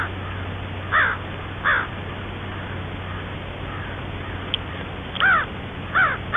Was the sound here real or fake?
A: real